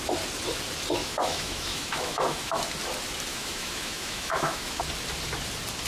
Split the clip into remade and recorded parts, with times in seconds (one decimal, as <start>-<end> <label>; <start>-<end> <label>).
0.0-1.0 recorded; 1.0-2.6 remade; 2.6-3.3 recorded; 3.3-4.8 remade; 4.8-5.9 recorded